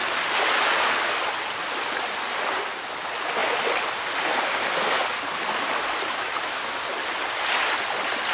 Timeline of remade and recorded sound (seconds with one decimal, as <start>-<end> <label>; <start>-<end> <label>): 0.0-8.3 recorded